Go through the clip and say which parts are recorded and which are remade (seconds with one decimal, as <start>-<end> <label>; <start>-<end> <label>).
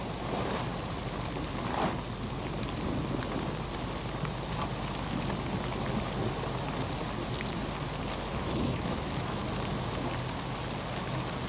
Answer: 0.0-8.3 recorded; 8.3-9.4 remade; 9.4-11.5 recorded